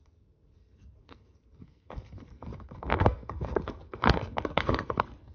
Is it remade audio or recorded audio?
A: remade